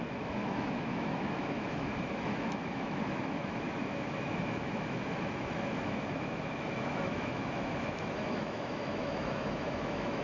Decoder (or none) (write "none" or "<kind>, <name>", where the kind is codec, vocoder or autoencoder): autoencoder, DAC-VAE